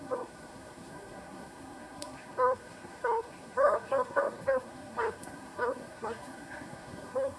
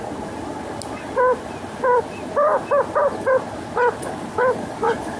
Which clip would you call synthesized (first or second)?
first